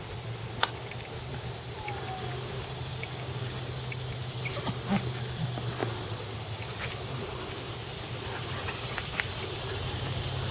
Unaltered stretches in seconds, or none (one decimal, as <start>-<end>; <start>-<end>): 0.0-2.9; 3.5-10.5